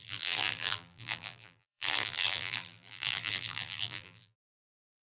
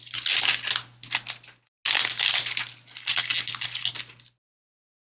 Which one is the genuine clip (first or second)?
second